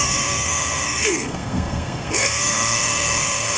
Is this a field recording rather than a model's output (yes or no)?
no